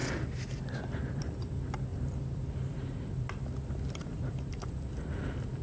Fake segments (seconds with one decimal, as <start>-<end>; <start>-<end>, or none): 0.0-1.3; 1.9-4.3